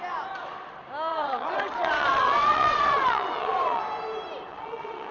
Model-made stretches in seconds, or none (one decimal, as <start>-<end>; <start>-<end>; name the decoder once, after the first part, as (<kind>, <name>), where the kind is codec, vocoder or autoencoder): 1.1-3.8 (vocoder, WaveNeXt); 4.5-5.1